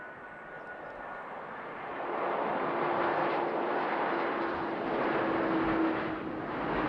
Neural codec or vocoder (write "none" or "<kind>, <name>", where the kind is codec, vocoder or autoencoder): none